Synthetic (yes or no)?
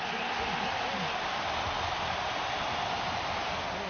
no